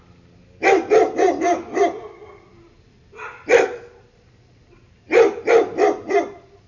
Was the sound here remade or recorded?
recorded